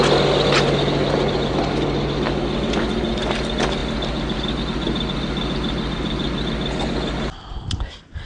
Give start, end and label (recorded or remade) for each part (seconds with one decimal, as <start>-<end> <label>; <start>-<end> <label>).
0.0-8.3 recorded